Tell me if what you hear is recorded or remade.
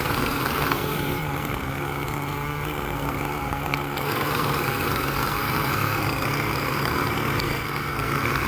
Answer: remade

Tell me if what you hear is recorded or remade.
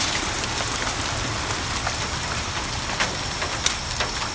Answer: recorded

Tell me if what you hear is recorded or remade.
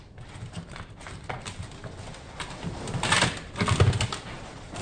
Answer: recorded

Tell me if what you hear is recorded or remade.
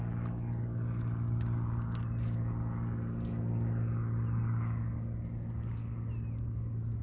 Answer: recorded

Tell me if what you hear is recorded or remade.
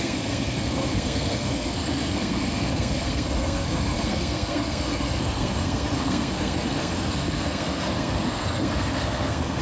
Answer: remade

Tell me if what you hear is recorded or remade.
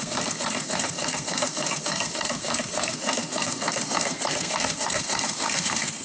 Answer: remade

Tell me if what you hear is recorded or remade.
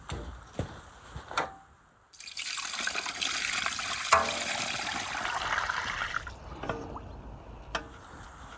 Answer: recorded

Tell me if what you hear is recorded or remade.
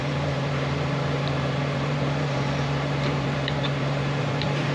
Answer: remade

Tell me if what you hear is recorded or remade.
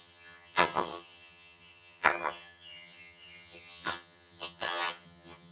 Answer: remade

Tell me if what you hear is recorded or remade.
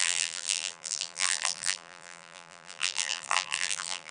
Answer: remade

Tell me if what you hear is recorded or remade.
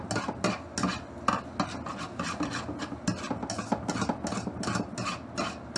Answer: recorded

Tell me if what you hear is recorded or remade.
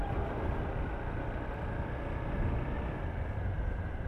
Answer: recorded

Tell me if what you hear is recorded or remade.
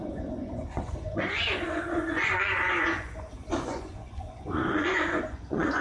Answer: remade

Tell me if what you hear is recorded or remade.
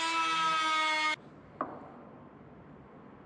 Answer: recorded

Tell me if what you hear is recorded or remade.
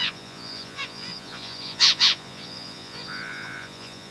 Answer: remade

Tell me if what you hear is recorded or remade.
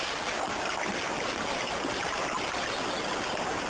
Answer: recorded